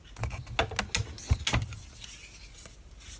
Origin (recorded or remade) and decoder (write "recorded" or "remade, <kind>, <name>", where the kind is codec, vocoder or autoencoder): recorded